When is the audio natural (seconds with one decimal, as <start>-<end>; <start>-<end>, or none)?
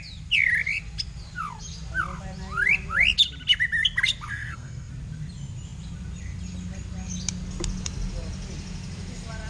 0.0-4.3; 4.9-9.5